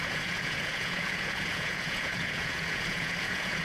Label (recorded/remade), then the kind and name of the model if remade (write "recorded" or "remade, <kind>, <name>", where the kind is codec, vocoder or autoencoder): remade, vocoder, Vocos